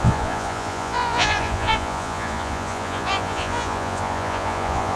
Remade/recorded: remade